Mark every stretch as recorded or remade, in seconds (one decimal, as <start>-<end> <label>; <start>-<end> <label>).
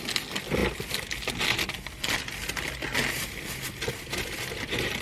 0.0-5.0 recorded